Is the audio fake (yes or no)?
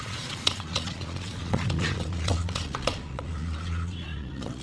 yes